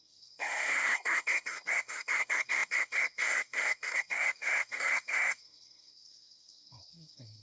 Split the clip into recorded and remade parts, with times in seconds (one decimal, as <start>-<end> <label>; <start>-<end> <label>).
0.0-7.4 remade